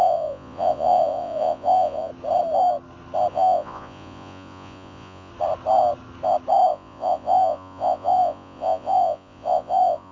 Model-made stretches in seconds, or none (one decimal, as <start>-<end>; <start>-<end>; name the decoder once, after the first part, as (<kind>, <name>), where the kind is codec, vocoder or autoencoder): 0.0-2.1 (vocoder, Vocos); 3.3-5.3; 6.7-10.1

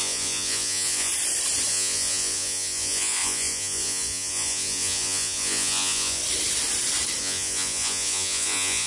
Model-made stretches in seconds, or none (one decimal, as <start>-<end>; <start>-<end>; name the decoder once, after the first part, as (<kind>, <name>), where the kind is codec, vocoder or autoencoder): 0.0-1.1 (vocoder, Vocos); 1.7-6.2; 7.2-8.9

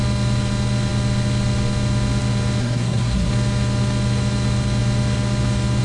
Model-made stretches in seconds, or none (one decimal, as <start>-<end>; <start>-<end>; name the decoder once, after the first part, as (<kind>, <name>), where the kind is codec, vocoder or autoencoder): 2.6-3.3 (codec, SNAC)

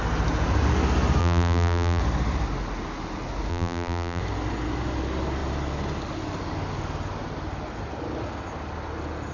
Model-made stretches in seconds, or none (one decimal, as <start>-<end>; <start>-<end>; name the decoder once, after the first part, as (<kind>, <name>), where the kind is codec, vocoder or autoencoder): 1.2-2.0 (vocoder, BigVGAN v2); 3.5-4.2